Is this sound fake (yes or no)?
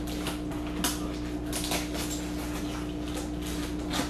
no